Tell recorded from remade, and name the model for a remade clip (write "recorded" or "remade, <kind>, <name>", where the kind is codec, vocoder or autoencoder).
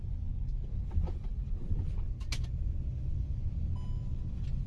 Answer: recorded